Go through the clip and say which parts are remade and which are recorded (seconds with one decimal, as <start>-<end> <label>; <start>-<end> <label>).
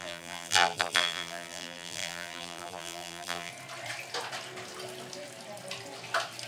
0.0-3.5 remade; 3.5-6.5 recorded